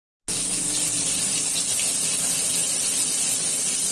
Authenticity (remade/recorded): recorded